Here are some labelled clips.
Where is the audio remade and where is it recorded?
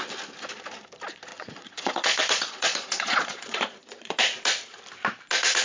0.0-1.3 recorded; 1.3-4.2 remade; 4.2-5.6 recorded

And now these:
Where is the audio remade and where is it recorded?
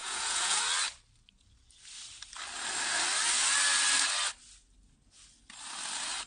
0.0-0.6 remade; 0.6-6.3 recorded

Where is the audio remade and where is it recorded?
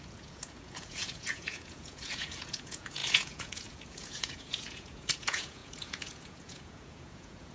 0.0-7.5 remade